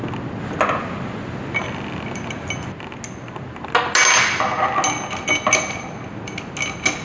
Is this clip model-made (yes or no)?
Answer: no